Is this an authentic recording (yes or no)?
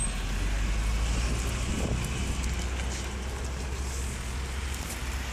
yes